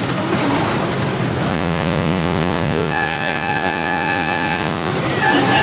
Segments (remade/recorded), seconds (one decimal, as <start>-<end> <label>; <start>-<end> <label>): 0.0-1.5 recorded; 1.5-4.9 remade; 4.9-5.6 recorded